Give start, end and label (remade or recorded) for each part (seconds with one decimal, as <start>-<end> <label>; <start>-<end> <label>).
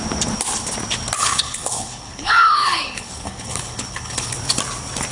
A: 0.0-1.2 recorded; 1.2-4.3 remade; 4.3-5.1 recorded